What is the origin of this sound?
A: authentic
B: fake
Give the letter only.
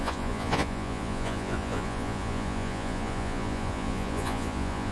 B